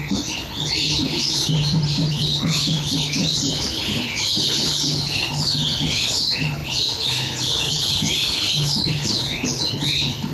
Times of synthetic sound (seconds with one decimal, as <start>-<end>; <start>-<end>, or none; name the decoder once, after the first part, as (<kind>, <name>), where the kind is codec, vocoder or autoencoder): 0.0-1.5 (codec, HILCodec); 2.1-10.3